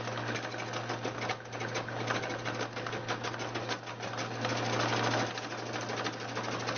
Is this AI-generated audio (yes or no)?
no